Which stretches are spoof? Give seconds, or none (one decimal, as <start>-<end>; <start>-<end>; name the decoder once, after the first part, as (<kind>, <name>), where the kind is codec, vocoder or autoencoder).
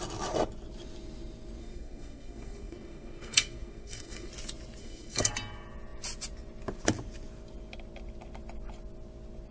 1.6-4.3 (codec, SNAC); 4.8-5.3